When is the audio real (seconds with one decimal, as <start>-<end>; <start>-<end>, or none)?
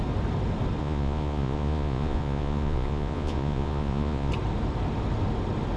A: 0.0-0.8; 4.3-5.8